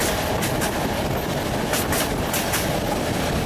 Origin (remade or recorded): recorded